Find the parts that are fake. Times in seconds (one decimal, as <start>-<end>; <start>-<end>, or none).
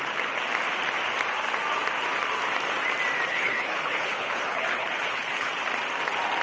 3.3-5.5